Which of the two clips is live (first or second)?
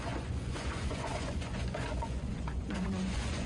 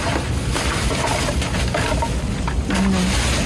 second